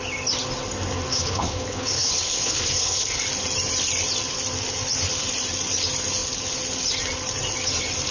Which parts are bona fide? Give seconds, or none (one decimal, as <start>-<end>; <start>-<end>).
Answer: 0.0-1.1; 3.2-8.1